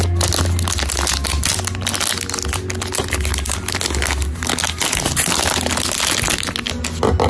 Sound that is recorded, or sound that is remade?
recorded